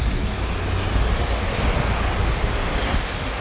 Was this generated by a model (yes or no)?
no